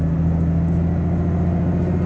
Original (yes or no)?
yes